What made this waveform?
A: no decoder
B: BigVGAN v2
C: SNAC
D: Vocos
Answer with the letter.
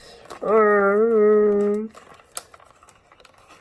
A